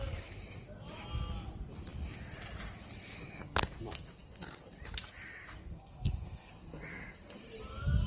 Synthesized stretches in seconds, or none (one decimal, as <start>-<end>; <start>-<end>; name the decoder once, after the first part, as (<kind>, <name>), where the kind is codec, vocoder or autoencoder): 5.6-6.5 (codec, SNAC)